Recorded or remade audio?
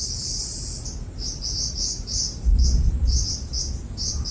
recorded